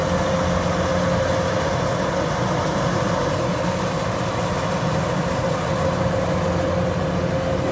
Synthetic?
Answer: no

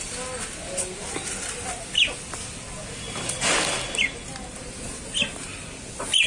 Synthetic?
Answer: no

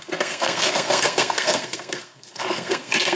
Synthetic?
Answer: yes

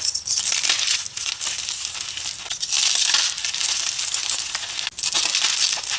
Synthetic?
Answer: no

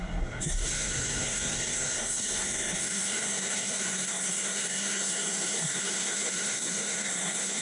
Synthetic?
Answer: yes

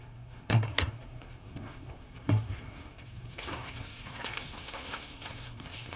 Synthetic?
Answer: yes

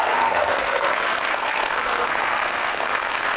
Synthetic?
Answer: yes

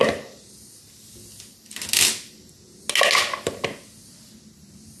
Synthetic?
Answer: no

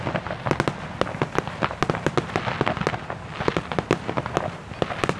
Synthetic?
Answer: no